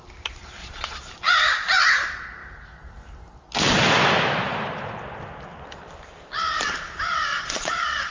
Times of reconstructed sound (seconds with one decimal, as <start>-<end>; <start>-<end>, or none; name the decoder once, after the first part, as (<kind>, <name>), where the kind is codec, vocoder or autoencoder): 0.6-1.1 (vocoder, Vocos); 7.3-8.1